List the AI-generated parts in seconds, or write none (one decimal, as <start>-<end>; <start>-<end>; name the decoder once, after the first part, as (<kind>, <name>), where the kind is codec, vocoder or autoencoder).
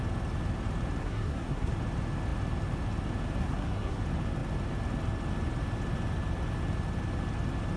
1.0-1.7 (codec, SNAC); 3.4-4.0